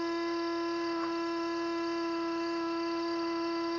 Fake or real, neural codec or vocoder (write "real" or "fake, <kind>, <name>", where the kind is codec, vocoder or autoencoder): fake, autoencoder, DAC-VAE